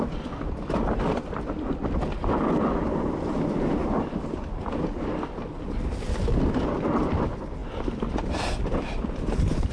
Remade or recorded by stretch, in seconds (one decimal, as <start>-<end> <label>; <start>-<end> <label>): 0.0-9.7 recorded